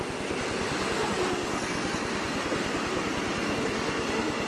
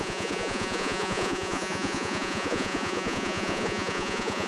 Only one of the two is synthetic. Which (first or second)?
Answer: second